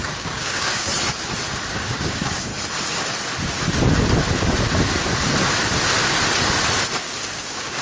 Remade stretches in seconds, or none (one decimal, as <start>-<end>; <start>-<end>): 0.0-0.9; 1.7-2.5; 7.0-7.8